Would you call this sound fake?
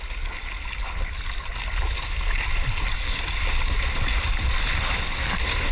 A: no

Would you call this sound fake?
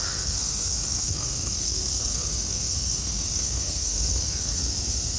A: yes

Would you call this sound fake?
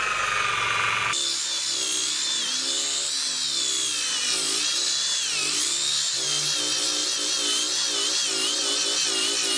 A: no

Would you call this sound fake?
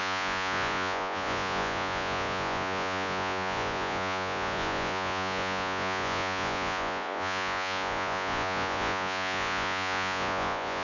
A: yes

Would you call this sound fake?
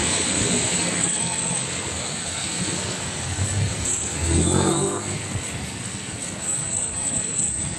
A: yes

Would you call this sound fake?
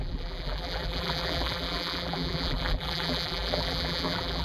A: yes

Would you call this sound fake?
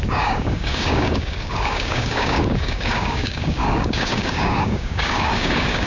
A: yes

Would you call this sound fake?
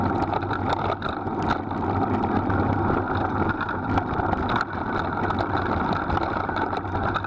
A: no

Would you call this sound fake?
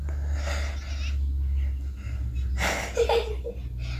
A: no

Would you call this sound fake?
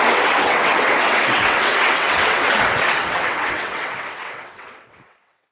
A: yes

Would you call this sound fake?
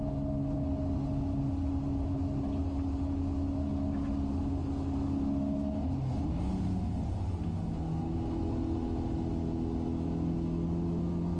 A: no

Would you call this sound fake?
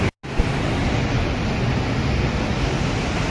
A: no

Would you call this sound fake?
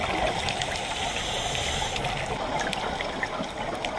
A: no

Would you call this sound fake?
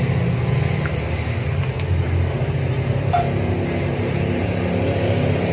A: no